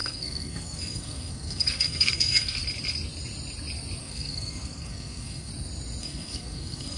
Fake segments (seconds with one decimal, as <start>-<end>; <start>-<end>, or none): 0.0-2.6; 4.0-5.5; 6.0-7.0